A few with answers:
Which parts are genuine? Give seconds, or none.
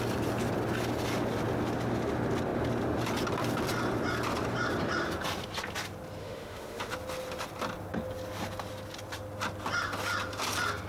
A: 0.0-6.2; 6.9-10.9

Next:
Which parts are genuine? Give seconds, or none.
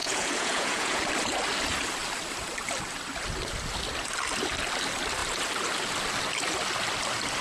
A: 1.0-7.4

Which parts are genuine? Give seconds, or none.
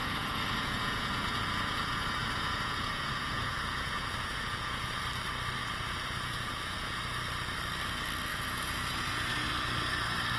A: 5.0-5.6; 7.0-8.3; 9.5-10.4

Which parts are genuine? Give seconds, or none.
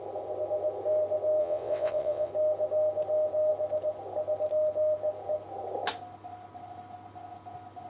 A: 0.0-1.4; 2.3-7.9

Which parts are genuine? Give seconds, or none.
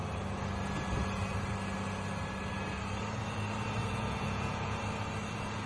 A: 0.0-3.8; 4.8-5.7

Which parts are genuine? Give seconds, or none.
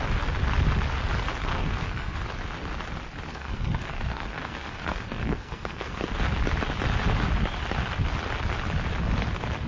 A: 0.0-1.5; 2.2-3.3; 6.0-9.7